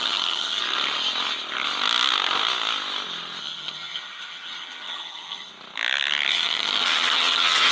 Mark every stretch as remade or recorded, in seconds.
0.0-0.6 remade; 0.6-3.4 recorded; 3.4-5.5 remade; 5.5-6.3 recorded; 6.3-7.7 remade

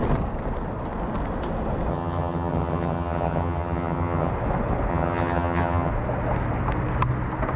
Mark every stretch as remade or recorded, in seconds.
0.0-1.9 recorded; 1.9-4.3 remade; 4.3-4.9 recorded; 4.9-5.9 remade; 5.9-7.6 recorded

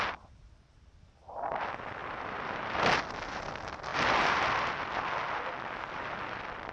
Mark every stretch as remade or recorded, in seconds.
0.0-6.7 recorded